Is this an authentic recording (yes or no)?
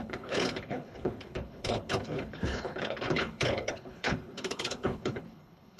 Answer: no